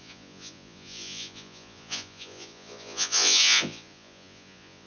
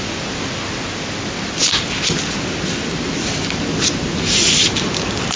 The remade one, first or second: first